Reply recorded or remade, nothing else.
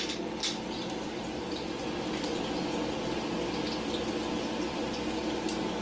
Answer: recorded